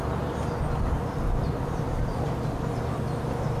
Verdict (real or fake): real